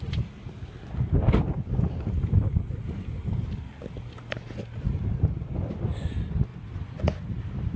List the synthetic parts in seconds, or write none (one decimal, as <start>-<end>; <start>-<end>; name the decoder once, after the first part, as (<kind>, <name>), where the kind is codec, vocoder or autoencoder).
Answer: none